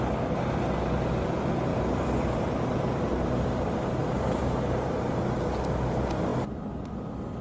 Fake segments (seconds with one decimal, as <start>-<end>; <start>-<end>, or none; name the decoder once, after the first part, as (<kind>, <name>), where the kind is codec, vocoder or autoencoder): 1.7-3.6 (vocoder, BigVGAN v2); 4.0-5.2